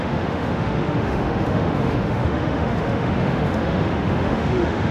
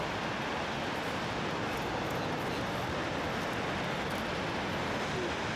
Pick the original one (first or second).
second